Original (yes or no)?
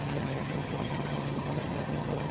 no